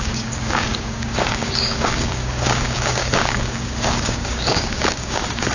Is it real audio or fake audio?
fake